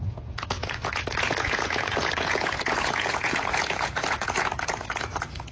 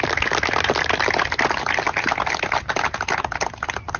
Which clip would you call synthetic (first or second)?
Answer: first